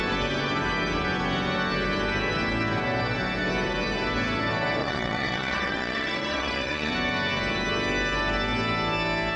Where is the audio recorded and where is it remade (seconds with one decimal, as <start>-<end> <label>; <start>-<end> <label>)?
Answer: 0.0-4.8 recorded; 4.8-6.9 remade; 6.9-9.4 recorded